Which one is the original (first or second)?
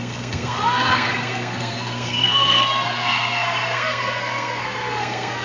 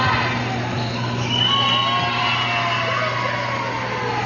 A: second